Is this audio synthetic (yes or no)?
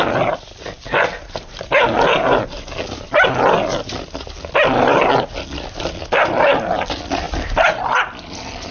no